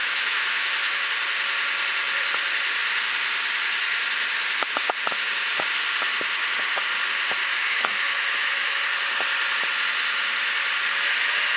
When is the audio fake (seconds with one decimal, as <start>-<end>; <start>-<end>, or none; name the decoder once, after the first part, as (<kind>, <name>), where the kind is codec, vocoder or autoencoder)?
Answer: 0.0-1.1 (autoencoder, DAC-VAE); 7.4-8.8